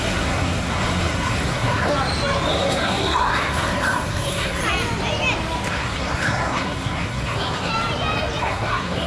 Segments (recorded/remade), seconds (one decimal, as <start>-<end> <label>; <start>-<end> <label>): 0.0-1.9 remade; 1.9-2.5 recorded; 2.5-4.6 remade; 4.6-5.7 recorded; 5.7-7.7 remade; 7.7-8.4 recorded; 8.4-9.1 remade